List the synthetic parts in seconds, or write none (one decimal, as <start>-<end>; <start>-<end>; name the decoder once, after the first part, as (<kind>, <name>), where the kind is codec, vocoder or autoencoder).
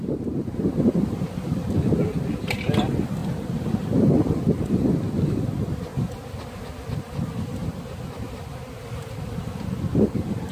0.0-5.9 (vocoder, BigVGAN v2); 7.0-10.5